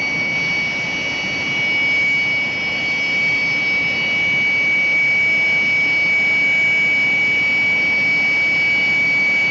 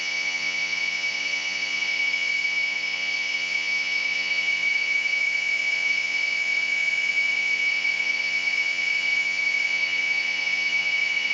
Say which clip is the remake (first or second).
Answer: second